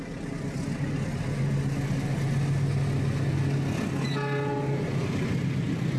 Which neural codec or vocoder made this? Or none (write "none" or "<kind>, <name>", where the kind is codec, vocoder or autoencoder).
none